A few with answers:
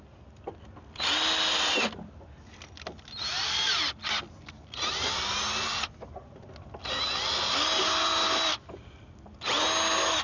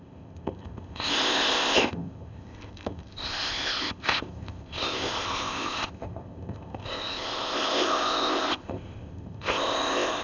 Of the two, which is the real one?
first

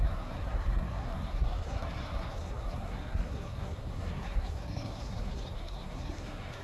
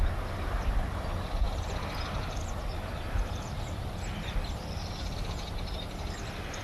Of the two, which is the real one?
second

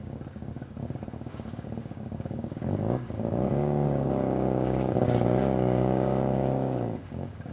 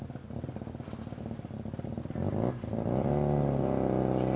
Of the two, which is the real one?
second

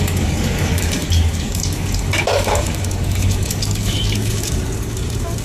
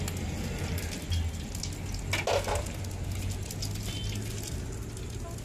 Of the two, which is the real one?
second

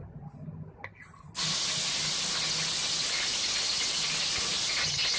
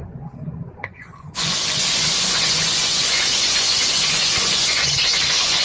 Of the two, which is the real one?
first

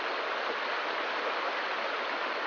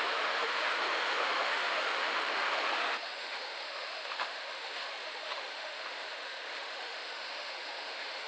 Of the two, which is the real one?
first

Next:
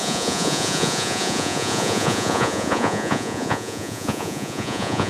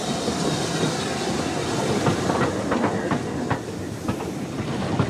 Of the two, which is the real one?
second